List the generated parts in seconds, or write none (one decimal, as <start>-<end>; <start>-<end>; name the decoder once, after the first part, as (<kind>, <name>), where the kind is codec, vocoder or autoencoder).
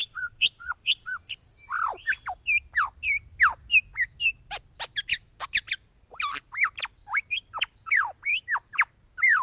0.0-1.1 (vocoder, Vocos)